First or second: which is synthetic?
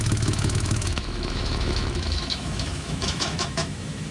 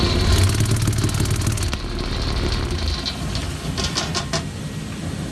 first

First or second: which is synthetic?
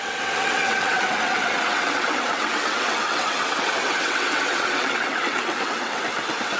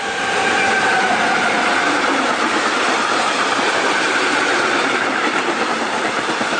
first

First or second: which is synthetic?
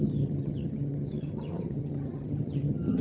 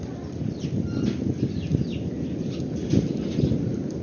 first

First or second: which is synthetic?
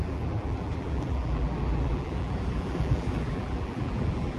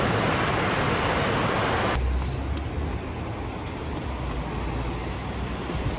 first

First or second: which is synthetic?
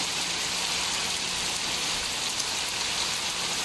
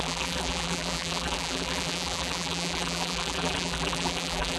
second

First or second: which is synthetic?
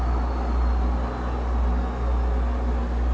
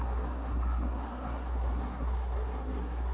second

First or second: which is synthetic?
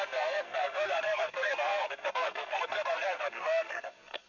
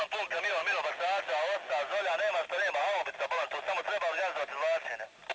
first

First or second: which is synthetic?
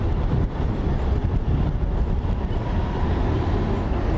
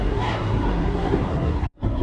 second